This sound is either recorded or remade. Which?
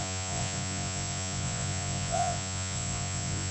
remade